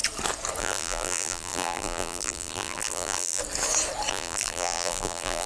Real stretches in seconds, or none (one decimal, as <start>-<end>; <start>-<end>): 0.0-0.6; 3.4-4.1